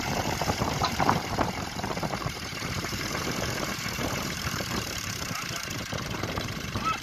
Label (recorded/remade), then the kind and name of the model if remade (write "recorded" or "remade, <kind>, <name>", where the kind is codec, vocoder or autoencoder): remade, vocoder, BigVGAN v2